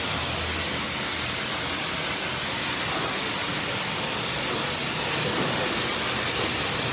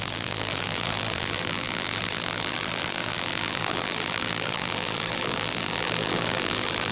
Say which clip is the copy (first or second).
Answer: second